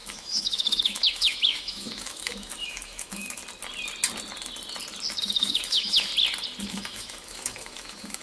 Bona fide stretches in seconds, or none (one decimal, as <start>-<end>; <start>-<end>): 3.4-5.2; 6.1-6.6